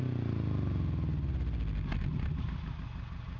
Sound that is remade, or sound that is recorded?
recorded